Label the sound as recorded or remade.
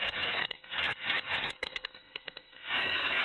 remade